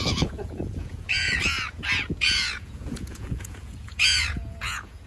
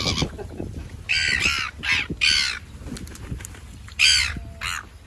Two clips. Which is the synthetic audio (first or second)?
first